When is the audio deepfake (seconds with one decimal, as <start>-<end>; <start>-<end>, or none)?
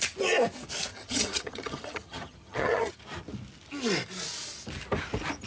0.9-3.0